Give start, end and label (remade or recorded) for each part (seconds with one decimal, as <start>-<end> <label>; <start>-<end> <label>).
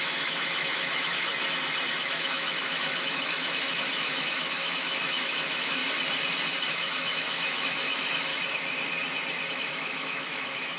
0.0-1.3 remade; 1.3-2.0 recorded; 2.0-5.8 remade; 5.8-6.7 recorded; 6.7-8.3 remade; 8.3-9.5 recorded; 9.5-10.8 remade